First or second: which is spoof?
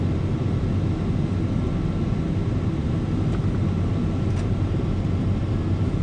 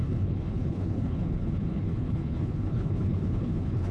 second